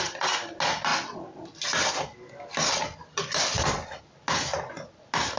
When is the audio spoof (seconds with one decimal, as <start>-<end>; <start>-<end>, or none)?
none